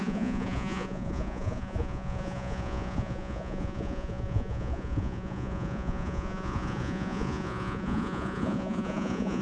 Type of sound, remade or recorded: remade